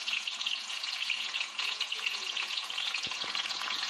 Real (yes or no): no